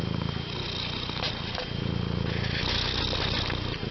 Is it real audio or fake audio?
real